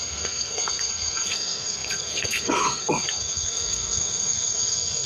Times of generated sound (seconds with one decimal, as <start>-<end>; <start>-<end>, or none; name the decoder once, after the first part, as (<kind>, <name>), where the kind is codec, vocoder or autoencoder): 0.0-5.1 (codec, SNAC)